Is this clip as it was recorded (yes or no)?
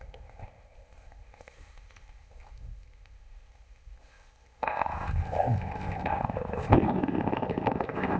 no